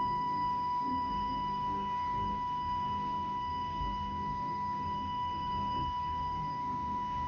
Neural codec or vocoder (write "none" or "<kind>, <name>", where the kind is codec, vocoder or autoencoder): codec, DAC